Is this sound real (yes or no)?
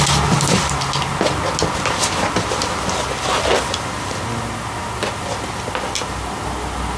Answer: yes